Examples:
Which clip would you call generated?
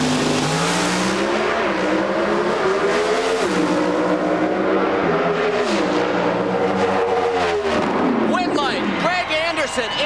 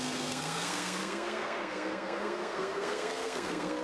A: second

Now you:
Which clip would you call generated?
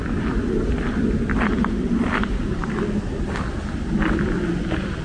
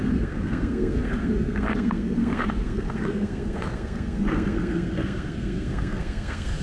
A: second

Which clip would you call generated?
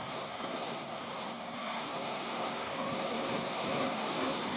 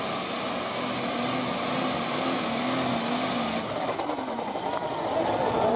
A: first